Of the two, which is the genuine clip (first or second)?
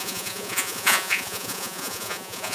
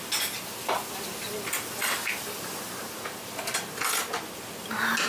second